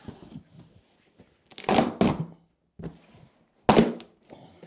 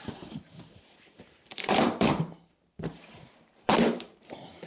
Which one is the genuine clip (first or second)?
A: first